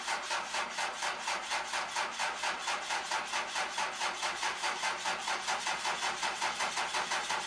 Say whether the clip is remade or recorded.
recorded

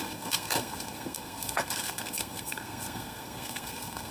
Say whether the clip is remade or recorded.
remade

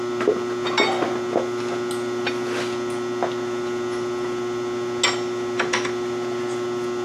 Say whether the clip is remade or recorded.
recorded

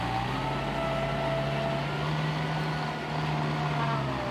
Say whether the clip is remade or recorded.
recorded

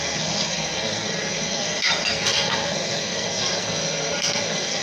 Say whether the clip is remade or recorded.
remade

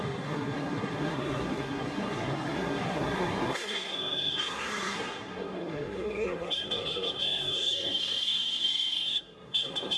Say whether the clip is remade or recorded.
remade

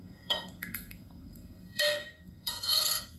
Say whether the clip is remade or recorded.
remade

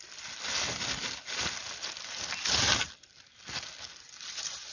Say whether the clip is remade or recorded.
recorded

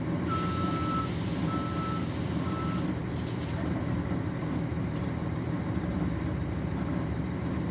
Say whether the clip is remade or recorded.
recorded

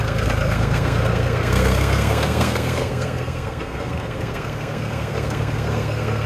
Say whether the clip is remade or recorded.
remade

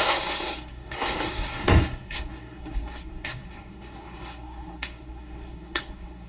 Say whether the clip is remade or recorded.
remade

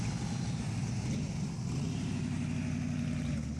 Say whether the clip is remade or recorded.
recorded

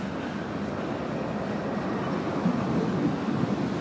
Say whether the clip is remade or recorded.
recorded